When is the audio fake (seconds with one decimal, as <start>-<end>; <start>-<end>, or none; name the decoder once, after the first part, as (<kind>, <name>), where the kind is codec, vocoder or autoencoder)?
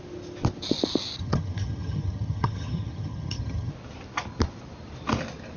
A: 1.2-3.7 (vocoder, HiFi-GAN)